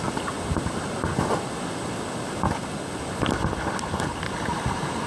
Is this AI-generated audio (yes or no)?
no